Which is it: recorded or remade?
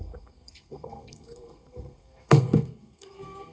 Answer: remade